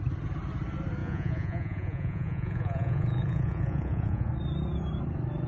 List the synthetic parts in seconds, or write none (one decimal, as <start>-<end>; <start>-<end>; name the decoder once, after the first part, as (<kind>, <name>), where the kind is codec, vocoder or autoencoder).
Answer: 1.0-4.3 (vocoder, Vocos)